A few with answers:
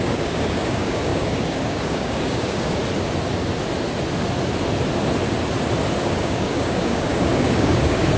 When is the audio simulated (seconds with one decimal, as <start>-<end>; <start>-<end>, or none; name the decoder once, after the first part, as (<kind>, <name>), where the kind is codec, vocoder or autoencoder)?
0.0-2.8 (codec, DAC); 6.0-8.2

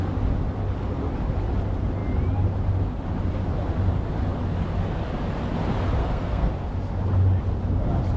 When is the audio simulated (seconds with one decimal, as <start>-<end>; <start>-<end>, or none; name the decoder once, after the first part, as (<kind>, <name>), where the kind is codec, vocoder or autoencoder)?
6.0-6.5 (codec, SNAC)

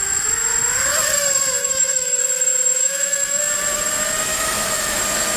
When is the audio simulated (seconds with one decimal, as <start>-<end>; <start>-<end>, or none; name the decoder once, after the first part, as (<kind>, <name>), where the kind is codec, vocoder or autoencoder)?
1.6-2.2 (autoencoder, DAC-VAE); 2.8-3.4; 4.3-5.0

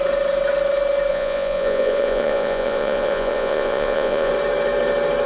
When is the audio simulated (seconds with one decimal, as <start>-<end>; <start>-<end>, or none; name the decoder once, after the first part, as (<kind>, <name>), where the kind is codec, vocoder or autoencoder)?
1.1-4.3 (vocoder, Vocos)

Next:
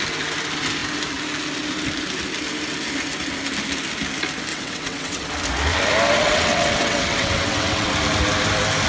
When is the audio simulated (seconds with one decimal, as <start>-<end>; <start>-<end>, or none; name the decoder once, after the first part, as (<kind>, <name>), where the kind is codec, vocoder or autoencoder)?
4.5-5.3 (vocoder, WaveNeXt); 6.2-7.9

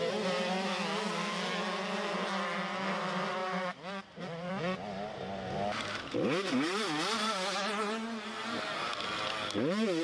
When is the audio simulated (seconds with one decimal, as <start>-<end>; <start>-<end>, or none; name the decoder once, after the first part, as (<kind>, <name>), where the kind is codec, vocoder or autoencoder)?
3.4-4.5 (vocoder, BigVGAN v2)

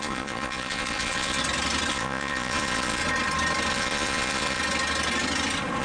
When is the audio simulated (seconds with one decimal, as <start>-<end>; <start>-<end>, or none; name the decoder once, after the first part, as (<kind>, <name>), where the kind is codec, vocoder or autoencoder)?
0.0-1.4 (vocoder, Vocos); 1.9-3.0; 3.7-4.6

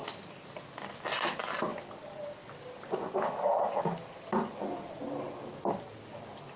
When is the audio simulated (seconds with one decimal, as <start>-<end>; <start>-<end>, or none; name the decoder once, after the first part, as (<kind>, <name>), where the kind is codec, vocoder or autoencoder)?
none